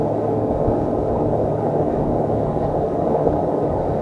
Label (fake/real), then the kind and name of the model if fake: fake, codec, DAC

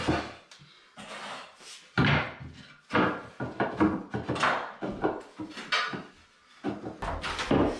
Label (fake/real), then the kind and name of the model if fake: real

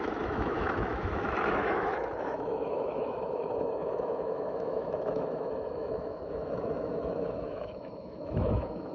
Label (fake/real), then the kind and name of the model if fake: fake, autoencoder, DAC-VAE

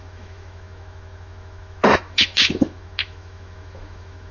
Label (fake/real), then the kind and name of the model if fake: fake, autoencoder, DAC-VAE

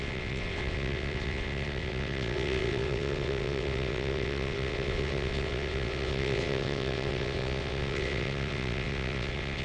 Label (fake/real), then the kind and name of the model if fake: fake, vocoder, WaveNeXt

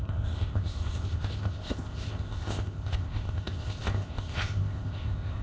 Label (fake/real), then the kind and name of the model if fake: fake, codec, ZipCodec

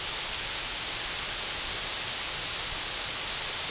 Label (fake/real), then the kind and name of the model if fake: fake, vocoder, BigVGAN v2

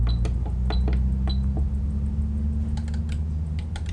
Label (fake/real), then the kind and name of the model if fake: real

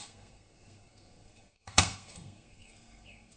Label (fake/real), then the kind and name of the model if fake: fake, codec, SNAC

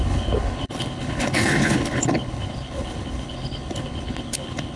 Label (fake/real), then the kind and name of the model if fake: fake, codec, HILCodec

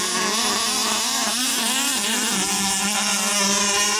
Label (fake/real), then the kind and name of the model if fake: real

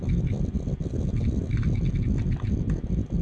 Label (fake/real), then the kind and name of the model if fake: real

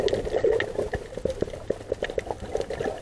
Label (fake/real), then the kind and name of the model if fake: real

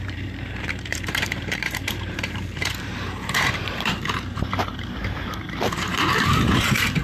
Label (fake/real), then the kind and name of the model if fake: fake, vocoder, BigVGAN v2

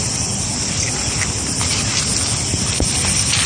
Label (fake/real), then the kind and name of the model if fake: real